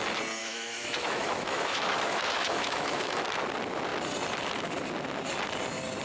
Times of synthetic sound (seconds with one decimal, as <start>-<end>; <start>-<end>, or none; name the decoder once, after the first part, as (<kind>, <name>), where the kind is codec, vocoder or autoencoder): 0.4-3.2 (autoencoder, DAC-VAE)